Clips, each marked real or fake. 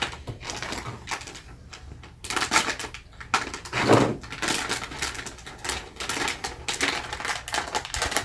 real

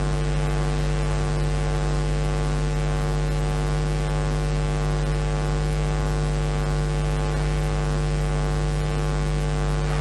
real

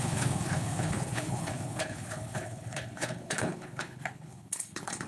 fake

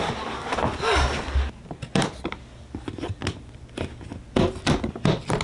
real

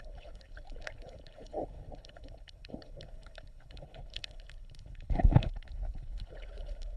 fake